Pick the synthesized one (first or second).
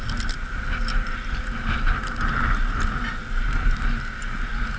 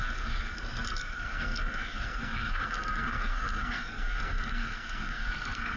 second